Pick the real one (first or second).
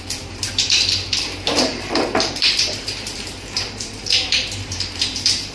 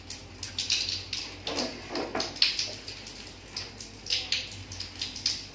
second